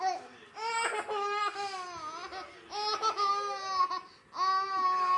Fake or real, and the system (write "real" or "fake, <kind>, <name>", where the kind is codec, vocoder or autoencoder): real